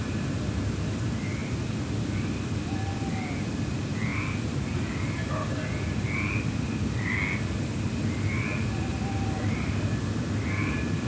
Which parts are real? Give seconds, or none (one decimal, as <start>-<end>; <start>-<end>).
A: 0.0-1.4; 1.9-11.1